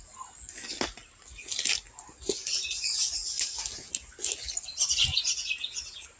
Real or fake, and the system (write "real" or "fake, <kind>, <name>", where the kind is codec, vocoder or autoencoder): real